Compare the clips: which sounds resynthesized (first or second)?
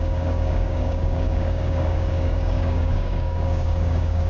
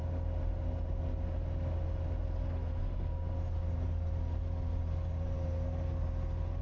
first